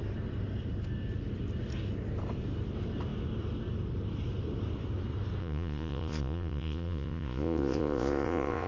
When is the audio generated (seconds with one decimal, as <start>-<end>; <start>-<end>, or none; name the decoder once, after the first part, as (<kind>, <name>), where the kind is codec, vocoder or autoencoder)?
5.4-8.7 (vocoder, Vocos)